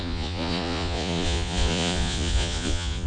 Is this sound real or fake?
fake